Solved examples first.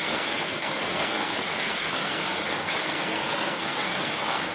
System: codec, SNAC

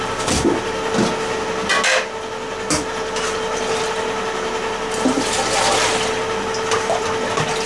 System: none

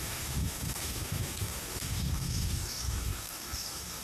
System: codec, DAC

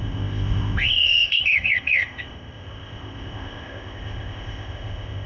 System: codec, ZipCodec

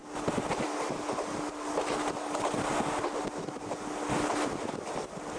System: none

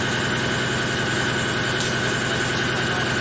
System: none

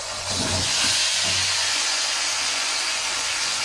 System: vocoder, Vocos